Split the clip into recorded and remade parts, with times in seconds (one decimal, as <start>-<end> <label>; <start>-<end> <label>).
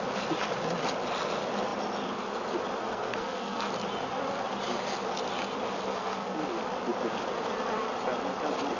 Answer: 0.0-2.8 recorded; 2.8-3.7 remade; 3.7-5.9 recorded; 5.9-6.4 remade; 6.4-8.8 recorded